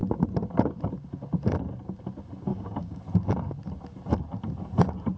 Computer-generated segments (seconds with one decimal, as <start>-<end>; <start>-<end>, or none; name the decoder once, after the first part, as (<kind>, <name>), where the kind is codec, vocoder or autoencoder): 2.5-3.0 (codec, DAC)